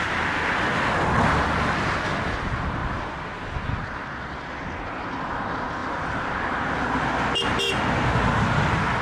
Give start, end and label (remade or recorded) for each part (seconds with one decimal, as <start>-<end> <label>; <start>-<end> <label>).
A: 0.0-2.8 recorded; 2.8-4.0 remade; 4.0-5.8 recorded; 5.8-6.8 remade; 6.8-9.0 recorded